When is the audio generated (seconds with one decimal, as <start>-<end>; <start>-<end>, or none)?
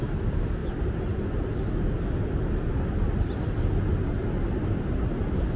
none